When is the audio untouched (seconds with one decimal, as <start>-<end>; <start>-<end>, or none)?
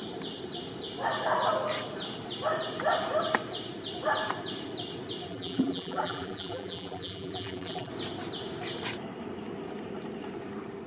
0.0-5.3; 7.9-10.9